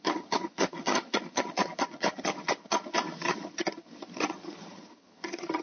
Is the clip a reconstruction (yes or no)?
yes